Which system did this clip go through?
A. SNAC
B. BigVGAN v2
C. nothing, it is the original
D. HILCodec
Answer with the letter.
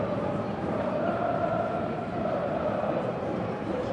B